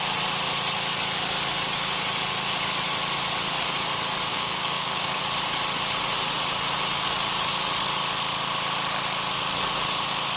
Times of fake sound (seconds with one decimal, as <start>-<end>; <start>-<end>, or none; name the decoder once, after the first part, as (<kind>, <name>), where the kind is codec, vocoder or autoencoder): 4.3-5.2 (codec, DAC)